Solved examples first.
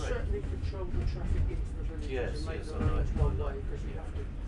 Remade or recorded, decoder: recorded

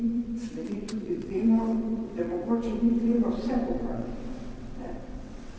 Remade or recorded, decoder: remade, vocoder, WaveNeXt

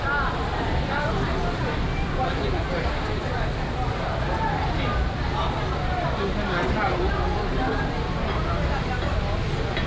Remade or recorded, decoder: recorded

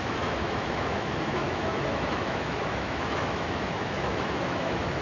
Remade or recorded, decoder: remade, autoencoder, DAC-VAE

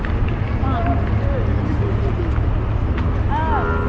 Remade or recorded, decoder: recorded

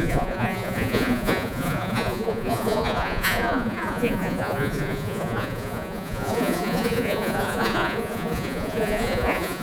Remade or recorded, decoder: remade, vocoder, Vocos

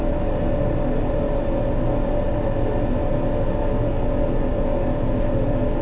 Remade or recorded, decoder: recorded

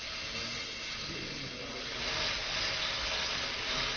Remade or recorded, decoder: recorded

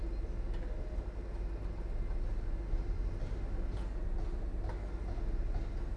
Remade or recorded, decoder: recorded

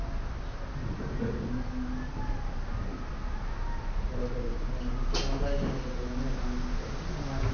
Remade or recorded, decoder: recorded